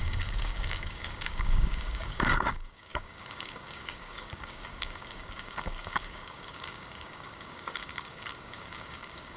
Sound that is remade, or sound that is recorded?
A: remade